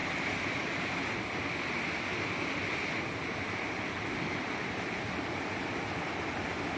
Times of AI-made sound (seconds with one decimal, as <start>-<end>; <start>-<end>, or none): none